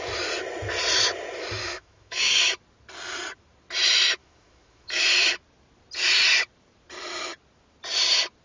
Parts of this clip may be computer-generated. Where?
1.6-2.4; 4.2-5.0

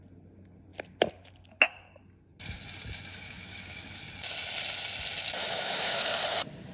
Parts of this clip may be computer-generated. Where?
3.1-4.0; 5.4-6.0

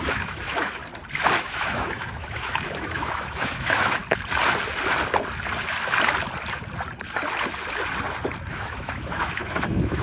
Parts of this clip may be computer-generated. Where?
0.0-0.8; 1.4-4.0; 8.5-10.0